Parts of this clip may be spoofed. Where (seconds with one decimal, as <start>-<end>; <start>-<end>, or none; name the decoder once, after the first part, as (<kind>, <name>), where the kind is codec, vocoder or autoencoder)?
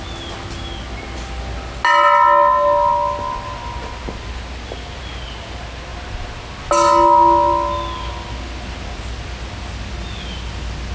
none